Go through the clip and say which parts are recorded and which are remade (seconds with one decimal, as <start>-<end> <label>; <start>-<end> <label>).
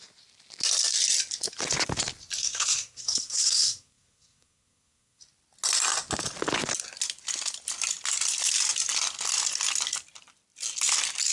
0.0-2.4 recorded; 2.4-5.2 remade; 5.2-11.3 recorded